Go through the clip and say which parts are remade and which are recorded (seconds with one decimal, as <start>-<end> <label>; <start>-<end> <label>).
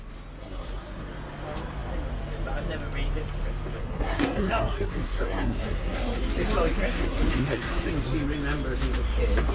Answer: 0.0-0.4 recorded; 0.4-1.0 remade; 1.0-3.8 recorded; 3.8-6.2 remade; 6.2-6.8 recorded; 6.8-7.9 remade; 7.9-9.5 recorded